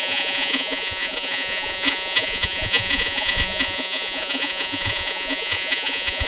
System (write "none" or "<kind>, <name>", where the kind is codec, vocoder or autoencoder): vocoder, Vocos